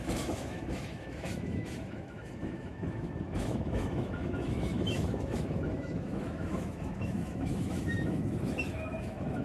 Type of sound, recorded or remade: remade